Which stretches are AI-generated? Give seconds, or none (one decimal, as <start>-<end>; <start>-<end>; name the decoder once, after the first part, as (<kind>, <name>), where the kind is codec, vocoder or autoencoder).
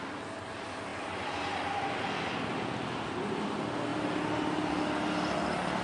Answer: none